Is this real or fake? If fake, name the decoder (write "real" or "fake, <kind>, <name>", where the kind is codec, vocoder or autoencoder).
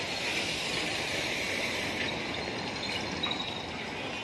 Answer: real